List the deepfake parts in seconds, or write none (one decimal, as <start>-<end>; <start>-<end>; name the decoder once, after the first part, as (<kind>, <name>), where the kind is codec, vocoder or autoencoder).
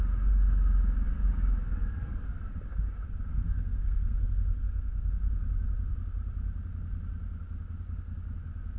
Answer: 3.3-5.1 (codec, SNAC)